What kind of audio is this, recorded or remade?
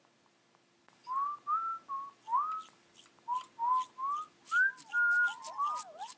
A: recorded